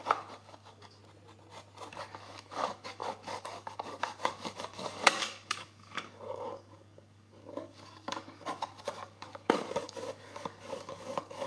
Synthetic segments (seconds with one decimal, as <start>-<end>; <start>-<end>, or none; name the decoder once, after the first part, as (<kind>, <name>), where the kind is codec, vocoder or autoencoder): 0.0-1.0 (codec, DAC); 1.9-11.5